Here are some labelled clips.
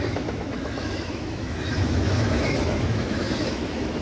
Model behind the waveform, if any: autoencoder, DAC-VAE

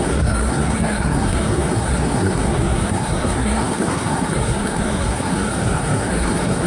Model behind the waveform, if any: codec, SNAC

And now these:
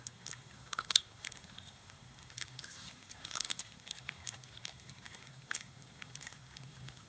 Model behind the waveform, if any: codec, SNAC